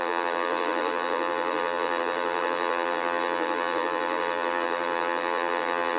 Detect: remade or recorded remade